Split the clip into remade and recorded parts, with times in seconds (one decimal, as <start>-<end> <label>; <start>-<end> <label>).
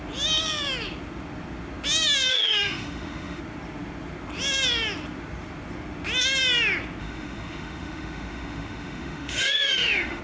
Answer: 0.0-2.3 recorded; 2.3-3.4 remade; 3.4-7.0 recorded; 7.0-10.2 remade